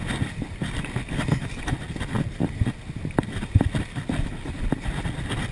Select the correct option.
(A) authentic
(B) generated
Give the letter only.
A